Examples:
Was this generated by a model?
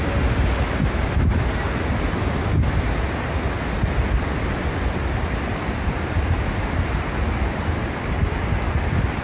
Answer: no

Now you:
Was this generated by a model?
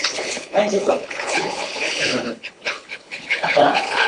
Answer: yes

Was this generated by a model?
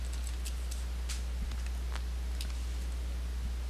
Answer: no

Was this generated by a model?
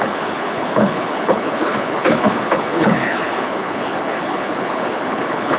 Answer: yes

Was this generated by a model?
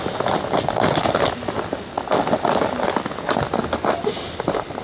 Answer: no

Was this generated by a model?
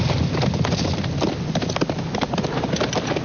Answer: no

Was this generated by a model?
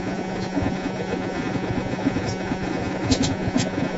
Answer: yes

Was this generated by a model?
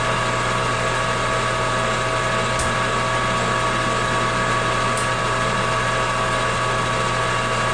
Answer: no